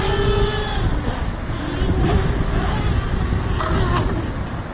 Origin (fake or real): real